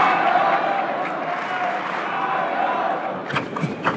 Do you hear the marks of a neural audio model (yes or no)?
no